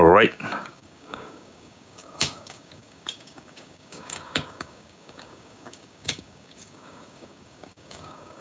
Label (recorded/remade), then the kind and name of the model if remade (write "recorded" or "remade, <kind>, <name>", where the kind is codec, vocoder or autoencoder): remade, codec, DAC